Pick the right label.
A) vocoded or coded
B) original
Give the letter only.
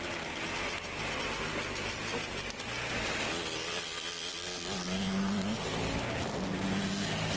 B